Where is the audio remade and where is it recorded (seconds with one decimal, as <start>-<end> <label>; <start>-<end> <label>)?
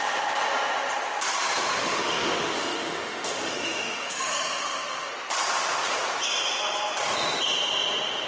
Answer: 0.0-1.8 recorded; 1.8-5.1 remade; 5.1-8.3 recorded